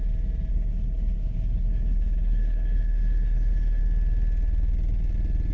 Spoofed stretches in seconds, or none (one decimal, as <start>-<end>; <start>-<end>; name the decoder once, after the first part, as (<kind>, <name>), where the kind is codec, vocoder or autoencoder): 0.5-3.8 (codec, HILCodec)